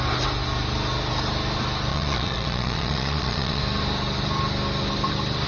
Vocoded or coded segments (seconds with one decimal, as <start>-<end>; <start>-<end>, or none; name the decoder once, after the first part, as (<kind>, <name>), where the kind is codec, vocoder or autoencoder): 1.9-3.6 (vocoder, Vocos)